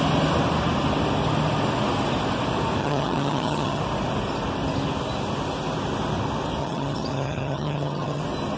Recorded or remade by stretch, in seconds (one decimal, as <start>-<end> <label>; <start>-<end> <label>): 0.0-2.8 recorded; 2.8-3.8 remade; 3.8-6.6 recorded; 6.6-8.2 remade; 8.2-8.6 recorded

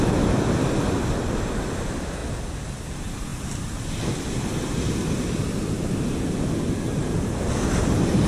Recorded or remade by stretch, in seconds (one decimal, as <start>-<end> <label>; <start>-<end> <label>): 0.0-8.3 recorded